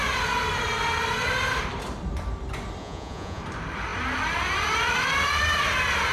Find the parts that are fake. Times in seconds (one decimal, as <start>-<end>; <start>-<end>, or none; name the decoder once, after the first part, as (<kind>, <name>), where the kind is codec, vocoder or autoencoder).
2.8-3.4 (vocoder, Vocos)